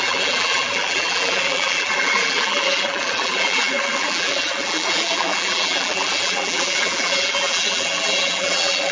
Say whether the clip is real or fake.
fake